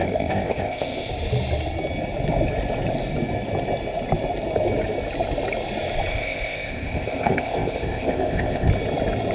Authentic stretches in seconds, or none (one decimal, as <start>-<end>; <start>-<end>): 1.1-6.1; 8.7-9.3